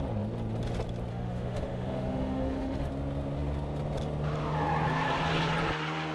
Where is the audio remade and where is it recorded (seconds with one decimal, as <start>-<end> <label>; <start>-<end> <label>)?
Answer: 0.0-1.1 recorded; 1.1-2.9 remade; 2.9-6.1 recorded